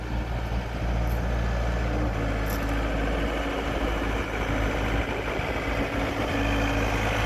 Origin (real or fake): real